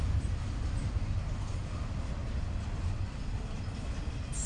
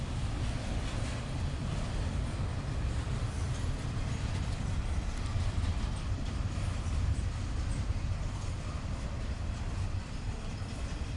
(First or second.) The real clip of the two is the first